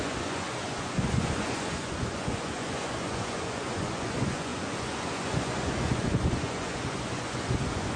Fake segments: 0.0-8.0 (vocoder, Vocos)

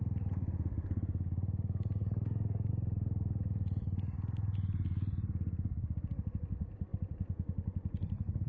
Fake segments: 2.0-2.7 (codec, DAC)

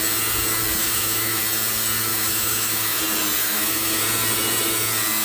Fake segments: 0.8-1.4 (autoencoder, DAC-VAE); 2.1-3.0; 3.4-4.0